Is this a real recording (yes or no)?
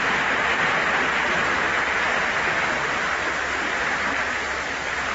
yes